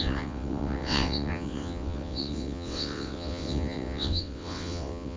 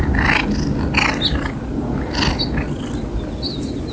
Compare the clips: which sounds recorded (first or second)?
second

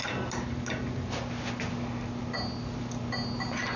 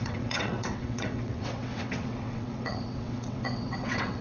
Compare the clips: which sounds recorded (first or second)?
first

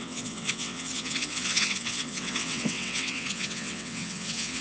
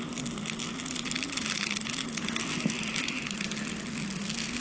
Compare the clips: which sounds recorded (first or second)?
second